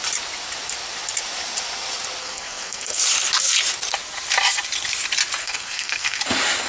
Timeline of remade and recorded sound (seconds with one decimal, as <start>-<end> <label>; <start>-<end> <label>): 0.0-2.2 recorded; 2.2-3.0 remade; 3.0-5.4 recorded; 5.4-6.2 remade; 6.2-6.7 recorded